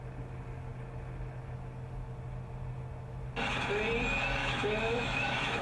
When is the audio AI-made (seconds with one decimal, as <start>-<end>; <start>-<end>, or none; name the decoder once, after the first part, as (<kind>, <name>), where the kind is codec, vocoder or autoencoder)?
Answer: 4.4-5.6 (autoencoder, DAC-VAE)